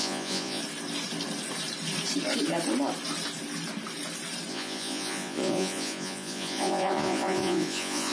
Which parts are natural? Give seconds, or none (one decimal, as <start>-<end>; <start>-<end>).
0.6-4.5